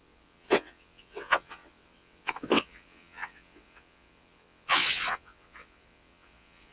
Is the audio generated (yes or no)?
yes